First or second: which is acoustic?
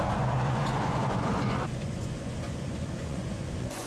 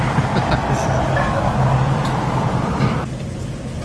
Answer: second